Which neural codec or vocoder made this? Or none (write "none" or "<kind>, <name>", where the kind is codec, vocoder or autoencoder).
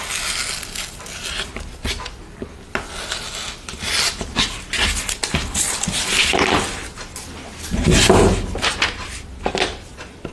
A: none